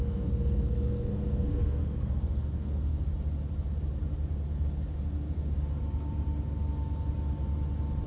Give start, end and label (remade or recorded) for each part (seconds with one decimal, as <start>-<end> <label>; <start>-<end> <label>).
0.0-2.9 remade; 2.9-8.1 recorded